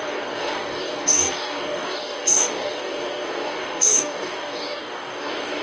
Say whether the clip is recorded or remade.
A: remade